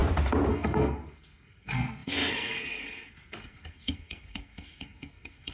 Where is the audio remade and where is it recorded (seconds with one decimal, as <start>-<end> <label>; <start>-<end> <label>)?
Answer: 0.0-0.5 recorded; 0.5-5.5 remade